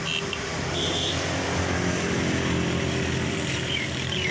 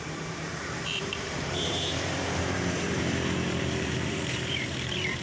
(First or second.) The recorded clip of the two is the first